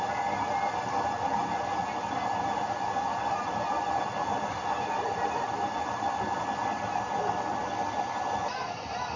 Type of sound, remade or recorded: recorded